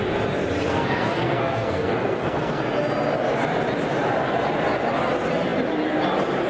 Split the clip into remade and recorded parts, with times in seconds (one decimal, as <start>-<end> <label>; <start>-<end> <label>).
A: 0.0-0.7 recorded; 0.7-2.6 remade; 2.6-6.5 recorded

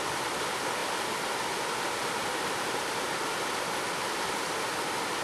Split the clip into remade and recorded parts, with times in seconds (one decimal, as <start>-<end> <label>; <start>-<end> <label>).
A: 0.0-5.2 recorded

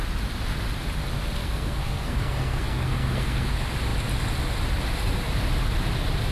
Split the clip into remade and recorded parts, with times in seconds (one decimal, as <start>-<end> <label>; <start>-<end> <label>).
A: 0.0-1.4 recorded; 1.4-3.5 remade; 3.5-6.3 recorded

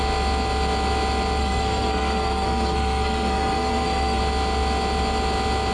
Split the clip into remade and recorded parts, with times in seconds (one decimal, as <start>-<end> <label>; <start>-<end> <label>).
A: 0.0-1.4 recorded; 1.4-4.2 remade; 4.2-5.7 recorded